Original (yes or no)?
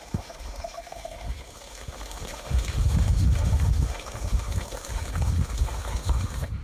no